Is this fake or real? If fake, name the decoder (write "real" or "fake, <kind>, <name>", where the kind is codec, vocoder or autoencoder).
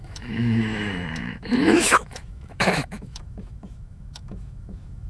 fake, autoencoder, DAC-VAE